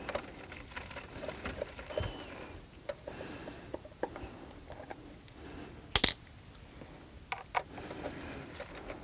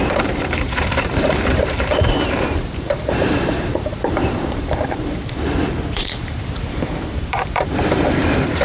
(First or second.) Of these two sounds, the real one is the first